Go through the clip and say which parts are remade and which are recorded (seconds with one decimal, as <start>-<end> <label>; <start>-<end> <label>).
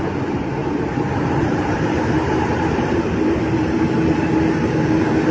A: 0.0-0.6 recorded; 0.6-3.8 remade; 3.8-5.3 recorded